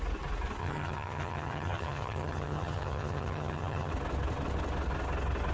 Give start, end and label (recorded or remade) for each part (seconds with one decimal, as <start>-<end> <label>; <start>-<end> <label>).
0.0-0.6 recorded; 0.6-3.9 remade; 3.9-5.5 recorded